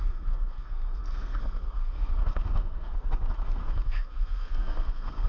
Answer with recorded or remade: remade